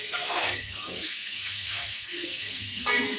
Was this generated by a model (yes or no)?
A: yes